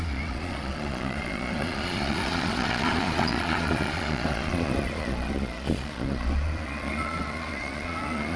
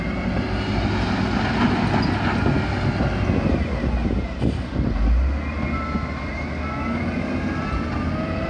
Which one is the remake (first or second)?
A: first